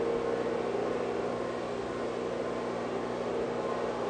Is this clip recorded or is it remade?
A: recorded